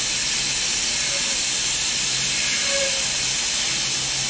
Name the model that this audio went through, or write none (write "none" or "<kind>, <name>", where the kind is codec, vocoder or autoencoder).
none